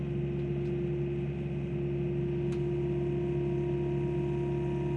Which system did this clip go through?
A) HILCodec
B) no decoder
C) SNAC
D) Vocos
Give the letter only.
B